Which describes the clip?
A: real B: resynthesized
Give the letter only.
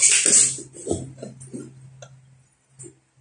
A